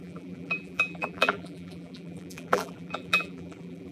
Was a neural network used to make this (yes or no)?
yes